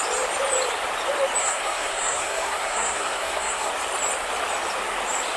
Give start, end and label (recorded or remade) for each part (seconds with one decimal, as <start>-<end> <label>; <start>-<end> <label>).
0.0-1.4 recorded; 1.4-3.7 remade; 3.7-5.4 recorded